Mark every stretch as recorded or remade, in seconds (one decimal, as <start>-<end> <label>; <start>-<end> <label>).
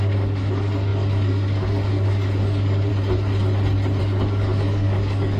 0.0-2.9 remade; 2.9-4.0 recorded; 4.0-5.4 remade